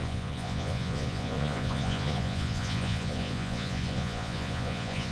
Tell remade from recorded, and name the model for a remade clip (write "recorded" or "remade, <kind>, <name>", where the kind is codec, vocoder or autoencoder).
remade, vocoder, Vocos